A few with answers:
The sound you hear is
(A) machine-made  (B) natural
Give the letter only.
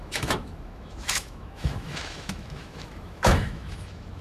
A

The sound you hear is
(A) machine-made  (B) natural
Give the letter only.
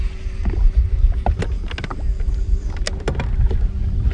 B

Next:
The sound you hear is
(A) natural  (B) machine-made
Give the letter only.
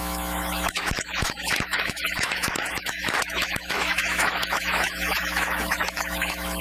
B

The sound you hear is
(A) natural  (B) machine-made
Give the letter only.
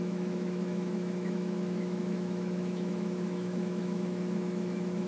B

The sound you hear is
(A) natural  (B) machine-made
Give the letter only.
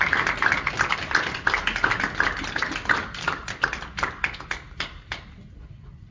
A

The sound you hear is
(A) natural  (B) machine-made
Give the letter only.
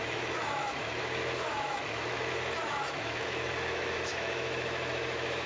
B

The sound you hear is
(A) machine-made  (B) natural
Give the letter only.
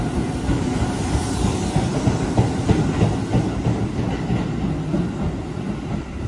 B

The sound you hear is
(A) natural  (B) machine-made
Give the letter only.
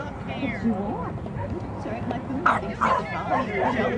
A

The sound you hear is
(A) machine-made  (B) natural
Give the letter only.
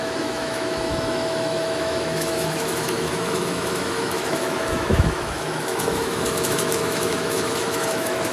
A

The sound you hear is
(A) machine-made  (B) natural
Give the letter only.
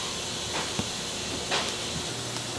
B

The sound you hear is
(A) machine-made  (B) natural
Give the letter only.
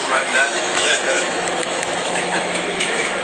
A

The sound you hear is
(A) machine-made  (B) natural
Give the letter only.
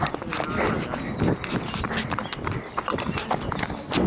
B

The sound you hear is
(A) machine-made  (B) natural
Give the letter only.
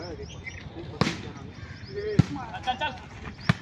B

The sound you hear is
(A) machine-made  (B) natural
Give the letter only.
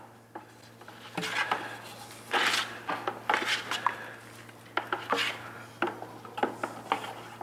B